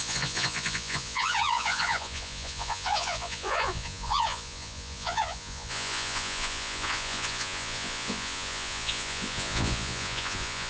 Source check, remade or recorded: remade